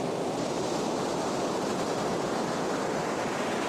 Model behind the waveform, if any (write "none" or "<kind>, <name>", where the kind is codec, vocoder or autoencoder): none